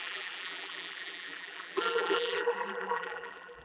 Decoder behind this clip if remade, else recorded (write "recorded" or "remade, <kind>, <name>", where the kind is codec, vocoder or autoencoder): remade, vocoder, BigVGAN v2